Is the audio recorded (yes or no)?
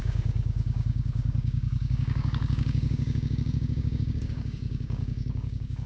no